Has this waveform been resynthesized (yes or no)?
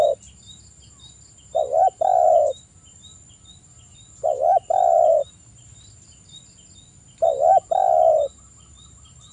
no